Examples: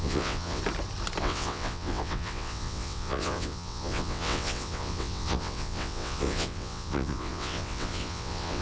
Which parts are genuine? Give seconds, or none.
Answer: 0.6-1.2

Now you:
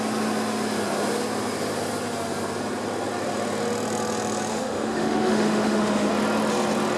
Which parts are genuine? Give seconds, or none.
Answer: 0.0-4.5; 6.1-7.0